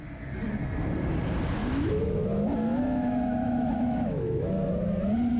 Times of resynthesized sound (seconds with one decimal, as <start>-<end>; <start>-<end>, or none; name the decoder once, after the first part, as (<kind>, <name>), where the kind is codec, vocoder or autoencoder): 1.6-4.5 (autoencoder, DAC-VAE)